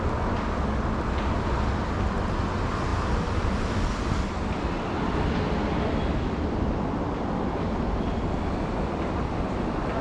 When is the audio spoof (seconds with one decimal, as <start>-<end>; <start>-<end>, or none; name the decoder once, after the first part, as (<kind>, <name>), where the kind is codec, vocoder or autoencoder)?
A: none